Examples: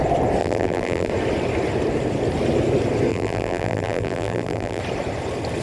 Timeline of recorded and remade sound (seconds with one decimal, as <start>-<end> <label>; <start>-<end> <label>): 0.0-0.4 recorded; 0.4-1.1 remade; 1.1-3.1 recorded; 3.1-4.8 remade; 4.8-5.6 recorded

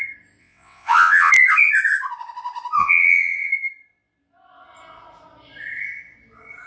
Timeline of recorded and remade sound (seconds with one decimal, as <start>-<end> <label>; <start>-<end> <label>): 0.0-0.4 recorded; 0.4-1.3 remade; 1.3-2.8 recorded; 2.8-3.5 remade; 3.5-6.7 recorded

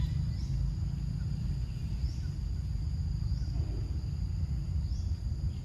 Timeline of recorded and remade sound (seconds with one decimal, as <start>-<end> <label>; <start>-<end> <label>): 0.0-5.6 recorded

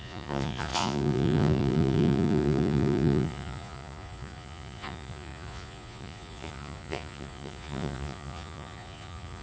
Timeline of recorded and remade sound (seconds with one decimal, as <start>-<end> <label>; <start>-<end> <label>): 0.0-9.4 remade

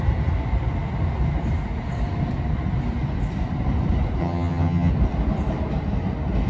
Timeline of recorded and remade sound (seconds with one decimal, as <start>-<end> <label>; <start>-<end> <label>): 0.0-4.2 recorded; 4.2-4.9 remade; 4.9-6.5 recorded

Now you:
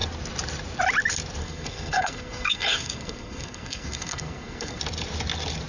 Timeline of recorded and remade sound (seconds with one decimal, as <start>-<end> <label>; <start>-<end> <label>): 0.0-1.4 recorded; 1.4-4.8 remade; 4.8-5.7 recorded

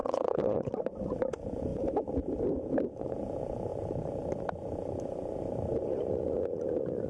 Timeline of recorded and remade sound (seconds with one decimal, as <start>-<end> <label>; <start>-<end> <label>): 0.0-0.7 remade; 0.7-7.1 recorded

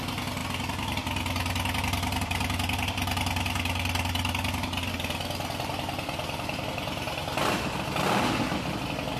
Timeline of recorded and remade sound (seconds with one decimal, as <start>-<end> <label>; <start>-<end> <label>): 0.0-9.2 recorded